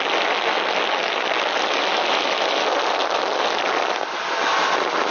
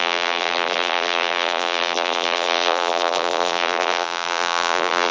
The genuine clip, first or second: first